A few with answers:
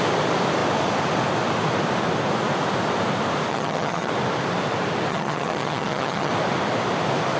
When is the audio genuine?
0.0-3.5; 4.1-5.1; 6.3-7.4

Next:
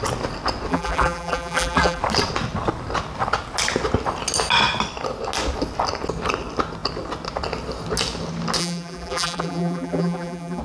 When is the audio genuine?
0.0-0.7; 2.0-8.6